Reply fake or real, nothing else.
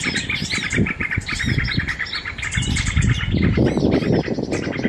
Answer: real